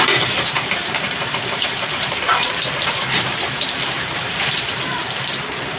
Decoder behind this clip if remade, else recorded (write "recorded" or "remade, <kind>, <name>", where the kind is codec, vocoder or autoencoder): remade, vocoder, BigVGAN v2